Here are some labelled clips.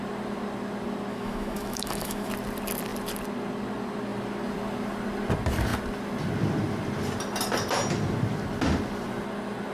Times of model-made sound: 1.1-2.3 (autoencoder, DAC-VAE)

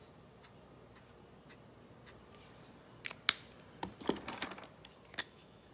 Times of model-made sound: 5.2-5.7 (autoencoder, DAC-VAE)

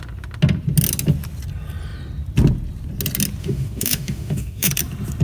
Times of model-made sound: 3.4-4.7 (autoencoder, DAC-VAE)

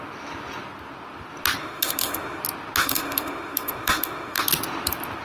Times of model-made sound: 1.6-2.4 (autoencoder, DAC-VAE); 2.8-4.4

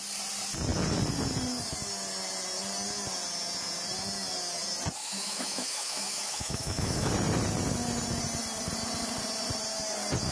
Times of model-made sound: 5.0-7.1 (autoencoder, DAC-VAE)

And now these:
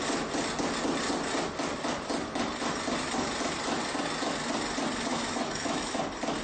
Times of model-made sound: 5.1-6.0 (autoencoder, DAC-VAE)

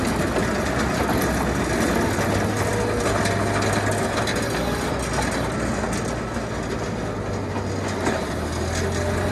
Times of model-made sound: none